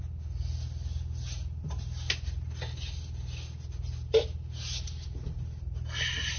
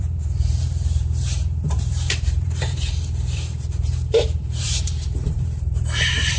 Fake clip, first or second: second